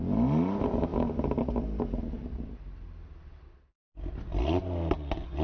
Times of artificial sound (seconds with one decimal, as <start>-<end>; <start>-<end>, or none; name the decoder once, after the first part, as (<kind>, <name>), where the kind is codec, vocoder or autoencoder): none